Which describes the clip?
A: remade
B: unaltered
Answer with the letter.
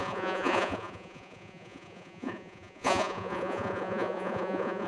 A